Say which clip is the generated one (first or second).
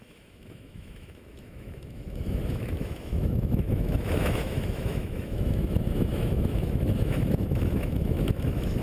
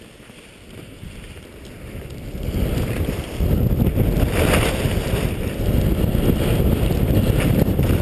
first